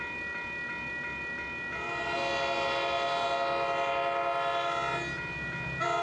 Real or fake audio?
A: real